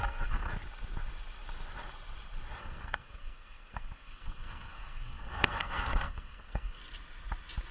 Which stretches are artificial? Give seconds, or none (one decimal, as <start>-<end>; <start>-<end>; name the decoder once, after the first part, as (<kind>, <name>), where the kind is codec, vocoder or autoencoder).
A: 0.0-0.5 (codec, SNAC); 2.6-6.8